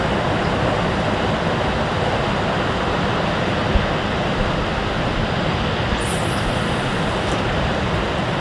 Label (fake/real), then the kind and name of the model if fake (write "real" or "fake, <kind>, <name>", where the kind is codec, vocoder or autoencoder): real